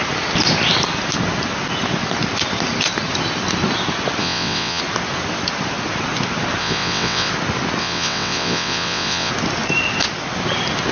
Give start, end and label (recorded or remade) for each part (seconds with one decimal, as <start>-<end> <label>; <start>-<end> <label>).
0.0-4.2 recorded; 4.2-4.8 remade; 4.8-6.6 recorded; 6.6-7.3 remade; 7.3-7.8 recorded; 7.8-9.3 remade; 9.3-10.9 recorded